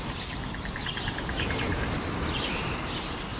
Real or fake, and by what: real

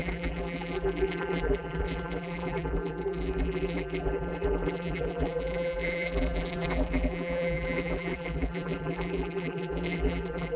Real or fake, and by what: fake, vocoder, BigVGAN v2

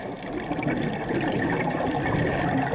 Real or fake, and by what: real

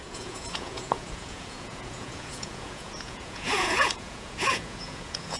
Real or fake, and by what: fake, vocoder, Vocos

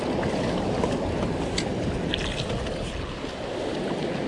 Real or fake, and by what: real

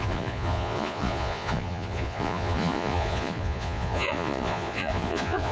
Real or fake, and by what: fake, vocoder, Vocos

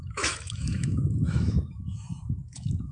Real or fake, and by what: fake, autoencoder, DAC-VAE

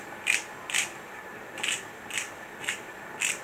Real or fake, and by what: real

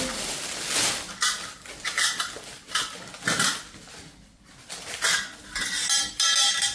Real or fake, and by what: real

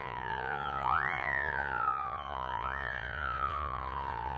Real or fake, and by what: fake, vocoder, Vocos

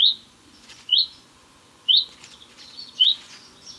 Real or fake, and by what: fake, vocoder, Vocos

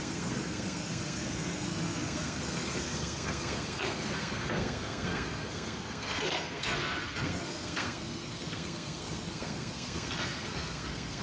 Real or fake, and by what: fake, codec, SNAC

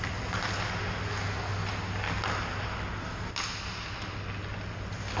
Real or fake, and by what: real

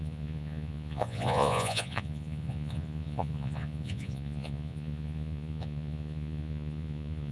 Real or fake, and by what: fake, vocoder, Vocos